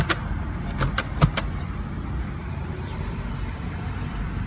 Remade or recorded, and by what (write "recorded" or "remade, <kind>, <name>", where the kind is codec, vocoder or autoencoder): recorded